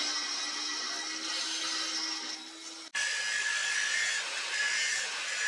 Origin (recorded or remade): recorded